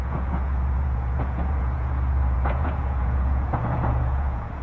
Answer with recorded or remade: remade